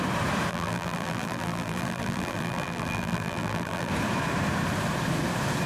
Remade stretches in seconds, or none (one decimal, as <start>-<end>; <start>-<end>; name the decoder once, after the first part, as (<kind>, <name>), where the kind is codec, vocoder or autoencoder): 0.5-3.9 (vocoder, BigVGAN v2)